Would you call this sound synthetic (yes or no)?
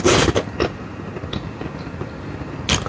no